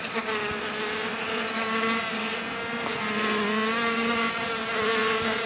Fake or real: real